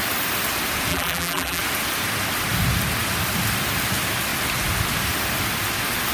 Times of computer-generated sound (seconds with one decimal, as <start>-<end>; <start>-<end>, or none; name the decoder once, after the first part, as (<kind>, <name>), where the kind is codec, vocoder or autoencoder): 0.9-1.6 (vocoder, BigVGAN v2)